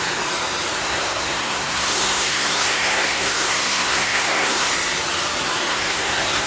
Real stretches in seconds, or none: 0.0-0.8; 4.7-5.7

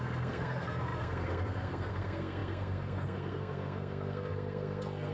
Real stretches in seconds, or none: none

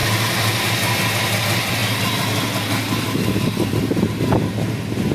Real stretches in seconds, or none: 0.0-5.1

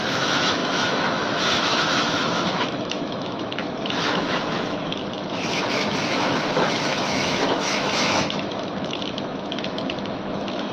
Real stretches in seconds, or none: none

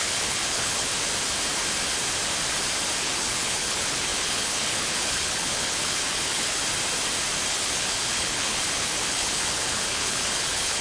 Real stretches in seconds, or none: 0.9-3.0; 6.6-7.5

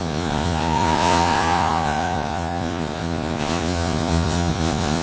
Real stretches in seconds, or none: none